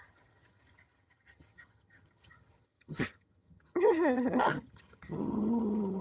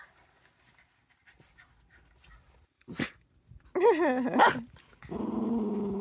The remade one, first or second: first